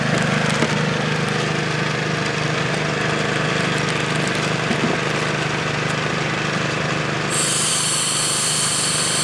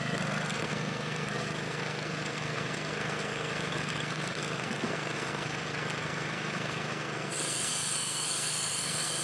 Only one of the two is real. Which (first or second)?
first